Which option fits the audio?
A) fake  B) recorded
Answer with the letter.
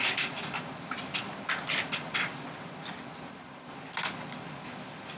B